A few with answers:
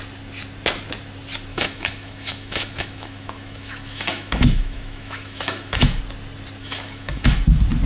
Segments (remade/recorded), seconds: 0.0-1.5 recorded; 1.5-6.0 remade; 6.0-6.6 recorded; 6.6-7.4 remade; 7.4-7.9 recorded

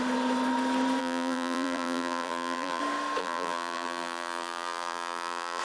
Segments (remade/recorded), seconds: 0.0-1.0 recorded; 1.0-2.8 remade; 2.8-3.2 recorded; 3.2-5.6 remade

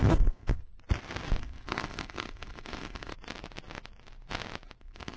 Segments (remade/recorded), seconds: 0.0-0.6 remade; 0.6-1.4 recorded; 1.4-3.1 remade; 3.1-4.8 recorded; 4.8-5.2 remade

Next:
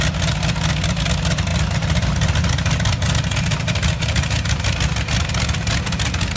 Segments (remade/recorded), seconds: 0.0-6.4 recorded